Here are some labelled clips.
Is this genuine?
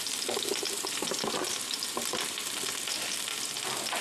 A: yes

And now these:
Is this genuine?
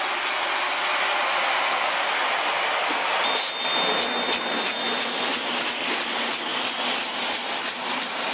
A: yes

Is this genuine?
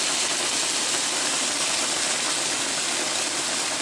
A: yes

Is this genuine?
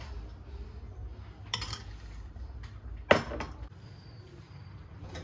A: yes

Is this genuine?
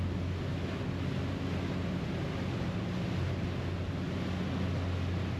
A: yes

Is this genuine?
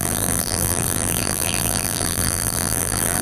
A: no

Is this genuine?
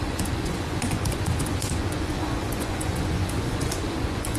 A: no